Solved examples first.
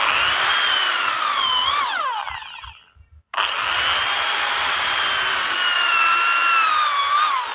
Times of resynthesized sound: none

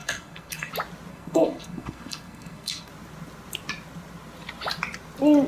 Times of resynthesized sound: 0.0-0.7; 1.1-2.9

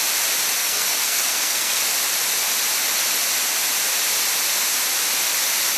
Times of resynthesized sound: 0.6-1.8

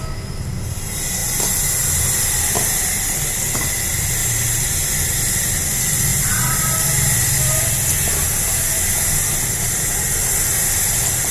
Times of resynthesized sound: none

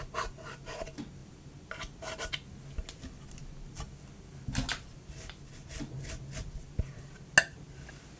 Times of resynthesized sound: none

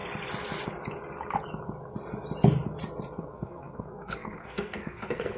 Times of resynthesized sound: 3.2-5.4